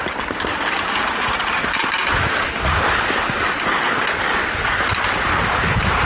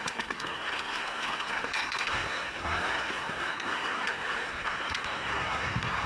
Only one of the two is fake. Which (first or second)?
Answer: second